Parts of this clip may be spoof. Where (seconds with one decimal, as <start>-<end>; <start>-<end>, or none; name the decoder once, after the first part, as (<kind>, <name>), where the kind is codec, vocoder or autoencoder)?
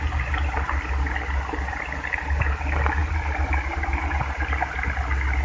3.0-4.8 (vocoder, BigVGAN v2)